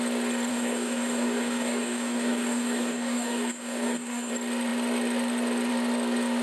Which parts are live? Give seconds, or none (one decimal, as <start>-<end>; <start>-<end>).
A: 0.0-0.5; 4.3-6.4